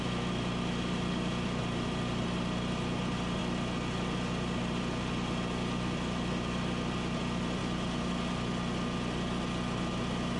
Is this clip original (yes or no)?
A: yes